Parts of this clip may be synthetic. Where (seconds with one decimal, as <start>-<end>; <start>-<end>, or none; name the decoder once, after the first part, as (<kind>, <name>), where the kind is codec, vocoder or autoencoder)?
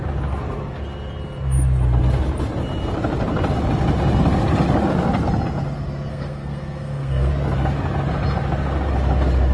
6.1-7.3 (codec, SNAC)